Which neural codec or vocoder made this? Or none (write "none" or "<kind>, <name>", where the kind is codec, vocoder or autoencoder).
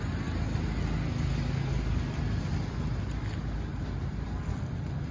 none